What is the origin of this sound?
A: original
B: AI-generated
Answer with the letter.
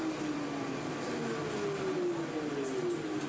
A